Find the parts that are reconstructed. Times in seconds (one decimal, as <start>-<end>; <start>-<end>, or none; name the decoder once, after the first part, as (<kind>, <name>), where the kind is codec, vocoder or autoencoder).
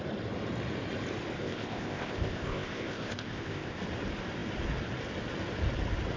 1.4-3.8 (codec, ZipCodec)